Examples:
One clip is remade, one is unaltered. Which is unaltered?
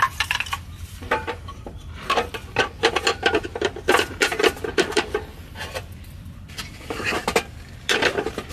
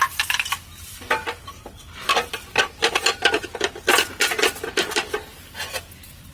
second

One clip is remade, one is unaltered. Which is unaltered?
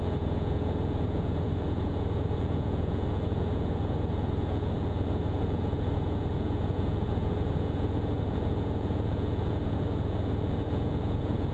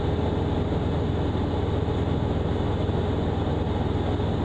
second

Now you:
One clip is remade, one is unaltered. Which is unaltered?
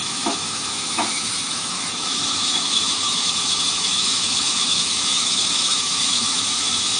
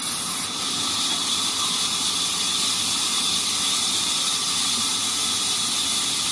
second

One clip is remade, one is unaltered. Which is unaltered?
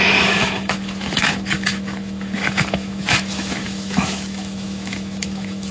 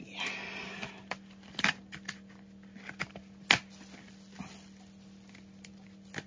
second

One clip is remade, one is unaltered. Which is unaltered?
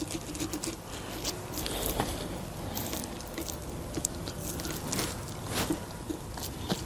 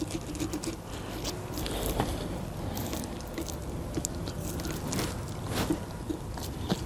first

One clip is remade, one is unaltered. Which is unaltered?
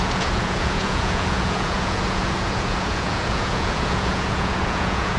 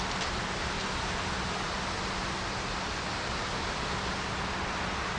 second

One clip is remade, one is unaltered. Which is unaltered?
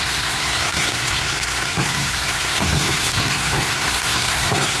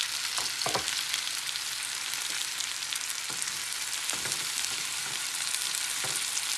second